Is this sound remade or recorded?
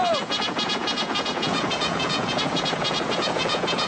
remade